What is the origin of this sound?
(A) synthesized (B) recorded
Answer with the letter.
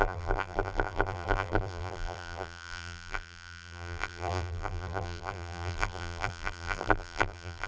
A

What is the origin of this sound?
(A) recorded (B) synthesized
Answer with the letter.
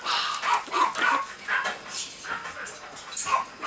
A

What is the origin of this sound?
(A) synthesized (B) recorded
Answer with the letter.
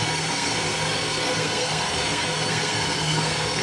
A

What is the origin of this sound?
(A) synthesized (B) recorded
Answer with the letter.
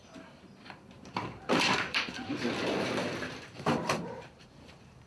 A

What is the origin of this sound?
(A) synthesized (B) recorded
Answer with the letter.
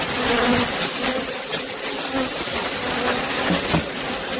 B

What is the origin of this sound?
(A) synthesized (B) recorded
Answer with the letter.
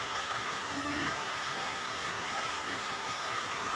A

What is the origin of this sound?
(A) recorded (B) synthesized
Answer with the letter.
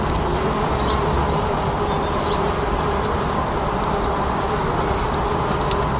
A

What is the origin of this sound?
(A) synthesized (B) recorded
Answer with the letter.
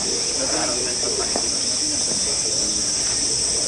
B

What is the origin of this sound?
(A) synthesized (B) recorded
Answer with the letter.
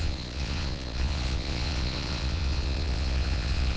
A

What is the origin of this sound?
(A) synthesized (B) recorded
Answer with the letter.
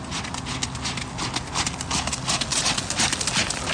B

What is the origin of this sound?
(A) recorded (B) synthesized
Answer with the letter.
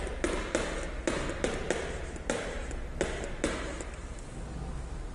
A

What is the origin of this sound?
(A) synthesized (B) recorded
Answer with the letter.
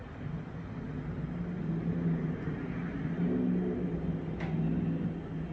B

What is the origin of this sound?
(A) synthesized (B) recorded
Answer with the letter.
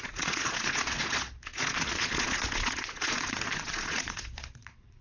A